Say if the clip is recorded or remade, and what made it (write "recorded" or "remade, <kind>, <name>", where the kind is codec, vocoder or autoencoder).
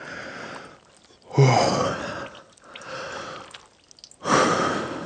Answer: recorded